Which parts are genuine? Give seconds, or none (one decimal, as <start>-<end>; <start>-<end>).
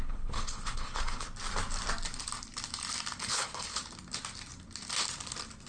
1.3-3.2; 3.8-5.7